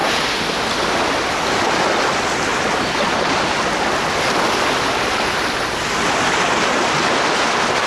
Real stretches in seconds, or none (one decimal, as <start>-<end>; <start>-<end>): 0.0-2.5; 7.1-7.9